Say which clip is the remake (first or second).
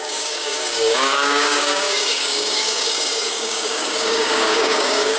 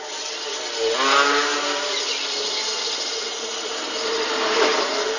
first